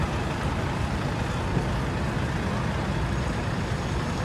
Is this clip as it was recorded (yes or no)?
yes